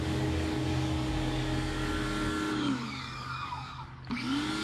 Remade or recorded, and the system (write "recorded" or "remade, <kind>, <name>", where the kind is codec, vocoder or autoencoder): remade, codec, DAC